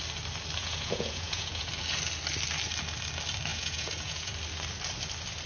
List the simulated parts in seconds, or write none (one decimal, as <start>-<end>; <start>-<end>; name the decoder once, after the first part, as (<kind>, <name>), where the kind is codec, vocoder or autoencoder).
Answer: 0.6-1.7 (vocoder, Vocos); 3.5-4.3